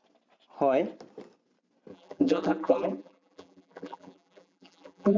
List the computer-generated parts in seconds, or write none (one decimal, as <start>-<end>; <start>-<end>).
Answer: 1.9-5.2